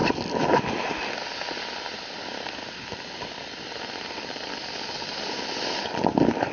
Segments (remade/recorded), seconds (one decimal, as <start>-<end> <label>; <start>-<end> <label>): 0.0-6.5 recorded